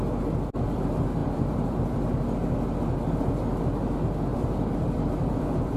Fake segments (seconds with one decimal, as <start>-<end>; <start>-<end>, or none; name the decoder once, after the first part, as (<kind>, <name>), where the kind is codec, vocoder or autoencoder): 1.2-2.1 (vocoder, BigVGAN v2); 4.3-5.8